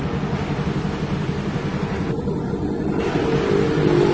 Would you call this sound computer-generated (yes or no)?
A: no